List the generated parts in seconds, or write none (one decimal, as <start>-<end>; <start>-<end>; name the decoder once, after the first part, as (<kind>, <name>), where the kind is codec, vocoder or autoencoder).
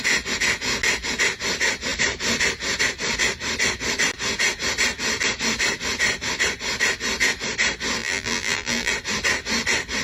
8.0-8.9 (vocoder, BigVGAN v2)